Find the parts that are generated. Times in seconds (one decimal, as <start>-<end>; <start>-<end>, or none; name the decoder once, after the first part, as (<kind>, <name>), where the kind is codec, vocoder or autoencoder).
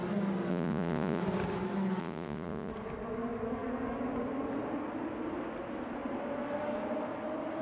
0.5-1.2 (vocoder, Vocos); 2.0-2.7